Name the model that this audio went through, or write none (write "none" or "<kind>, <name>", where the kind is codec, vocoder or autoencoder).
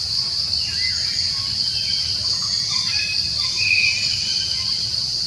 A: none